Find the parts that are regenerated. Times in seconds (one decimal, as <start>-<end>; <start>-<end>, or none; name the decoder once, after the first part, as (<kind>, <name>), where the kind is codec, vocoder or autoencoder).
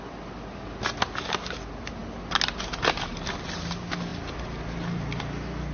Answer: none